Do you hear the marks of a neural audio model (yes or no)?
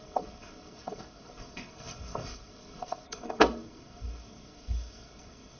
yes